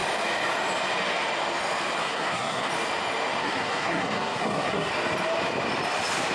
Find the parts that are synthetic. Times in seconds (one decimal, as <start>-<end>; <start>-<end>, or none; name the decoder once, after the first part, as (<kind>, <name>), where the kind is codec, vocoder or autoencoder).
2.0-2.7 (codec, SNAC); 3.4-4.9